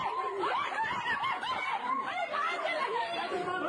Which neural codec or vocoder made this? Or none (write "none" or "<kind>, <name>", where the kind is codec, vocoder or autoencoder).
none